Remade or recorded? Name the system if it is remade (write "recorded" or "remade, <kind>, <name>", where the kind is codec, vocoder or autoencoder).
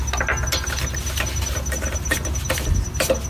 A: recorded